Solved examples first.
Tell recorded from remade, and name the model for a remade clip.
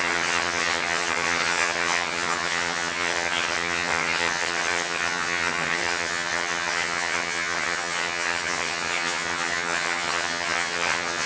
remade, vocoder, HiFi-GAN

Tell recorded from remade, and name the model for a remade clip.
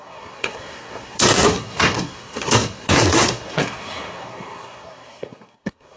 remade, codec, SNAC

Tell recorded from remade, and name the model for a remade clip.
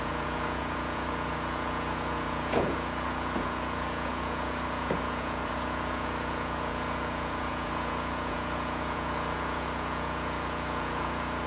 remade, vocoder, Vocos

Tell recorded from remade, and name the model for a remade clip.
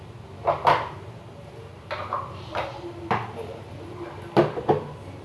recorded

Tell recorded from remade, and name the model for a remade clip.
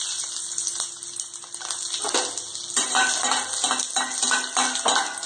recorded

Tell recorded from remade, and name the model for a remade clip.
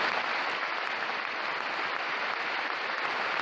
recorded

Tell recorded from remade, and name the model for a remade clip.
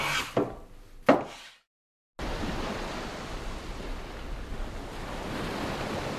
recorded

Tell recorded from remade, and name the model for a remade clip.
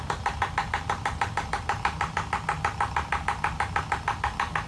recorded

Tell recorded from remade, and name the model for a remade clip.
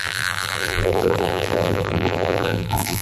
remade, vocoder, BigVGAN v2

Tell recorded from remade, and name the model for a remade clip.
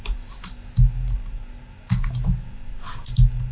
recorded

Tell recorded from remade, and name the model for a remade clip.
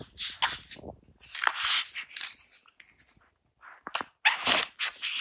recorded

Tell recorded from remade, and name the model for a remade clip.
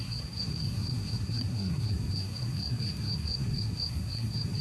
remade, codec, SNAC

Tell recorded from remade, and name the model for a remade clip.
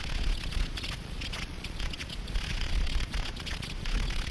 remade, vocoder, Vocos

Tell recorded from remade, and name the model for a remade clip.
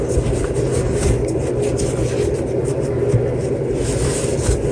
recorded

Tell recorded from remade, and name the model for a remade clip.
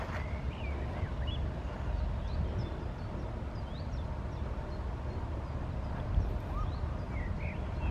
recorded